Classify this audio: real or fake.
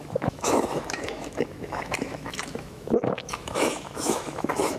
fake